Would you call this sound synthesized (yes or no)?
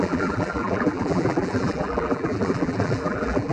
yes